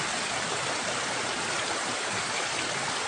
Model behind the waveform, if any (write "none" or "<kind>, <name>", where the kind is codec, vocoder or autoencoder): none